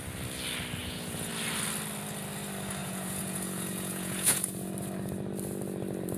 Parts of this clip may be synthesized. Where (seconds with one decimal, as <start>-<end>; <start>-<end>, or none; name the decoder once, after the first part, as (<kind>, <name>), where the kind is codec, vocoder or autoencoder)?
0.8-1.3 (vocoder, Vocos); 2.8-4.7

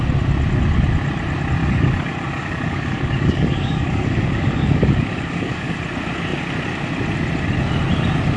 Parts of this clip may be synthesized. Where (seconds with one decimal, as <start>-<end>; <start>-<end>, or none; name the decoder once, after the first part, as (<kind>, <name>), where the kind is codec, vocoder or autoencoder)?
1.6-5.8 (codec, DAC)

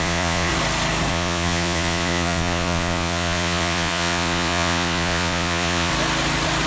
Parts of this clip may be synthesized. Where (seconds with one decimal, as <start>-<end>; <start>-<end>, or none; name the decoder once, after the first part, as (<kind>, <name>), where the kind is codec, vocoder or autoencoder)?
0.0-0.5 (vocoder, Vocos); 1.1-5.9

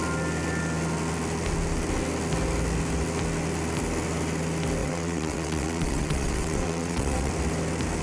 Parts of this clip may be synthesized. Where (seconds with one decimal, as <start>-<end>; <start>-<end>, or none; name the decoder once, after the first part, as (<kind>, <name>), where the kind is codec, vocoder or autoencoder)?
4.8-7.3 (vocoder, WaveNeXt)

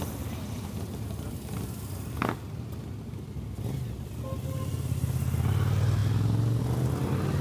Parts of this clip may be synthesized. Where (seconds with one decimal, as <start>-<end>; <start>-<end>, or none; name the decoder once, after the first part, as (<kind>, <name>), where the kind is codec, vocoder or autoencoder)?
none

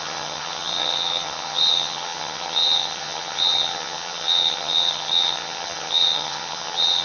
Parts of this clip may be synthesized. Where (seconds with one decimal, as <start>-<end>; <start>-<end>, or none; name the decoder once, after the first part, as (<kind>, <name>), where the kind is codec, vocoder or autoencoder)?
0.0-7.0 (vocoder, HiFi-GAN)

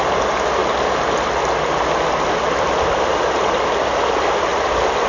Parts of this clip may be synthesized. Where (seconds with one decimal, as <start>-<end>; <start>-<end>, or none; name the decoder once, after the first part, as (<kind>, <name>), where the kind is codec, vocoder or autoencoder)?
none

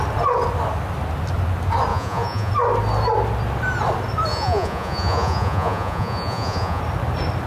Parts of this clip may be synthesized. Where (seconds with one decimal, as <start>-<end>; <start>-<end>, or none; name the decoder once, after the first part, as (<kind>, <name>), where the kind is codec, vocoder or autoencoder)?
1.9-2.5 (vocoder, Vocos); 4.3-6.8